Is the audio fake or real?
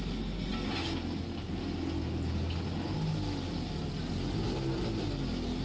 real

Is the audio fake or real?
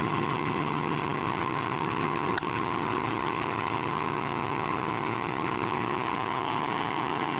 fake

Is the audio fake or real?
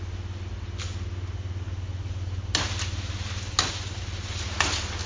real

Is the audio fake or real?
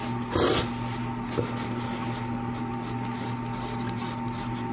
real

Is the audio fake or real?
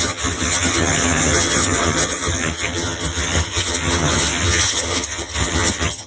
fake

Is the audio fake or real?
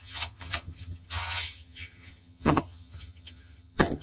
fake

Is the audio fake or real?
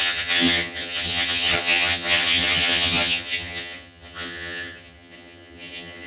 fake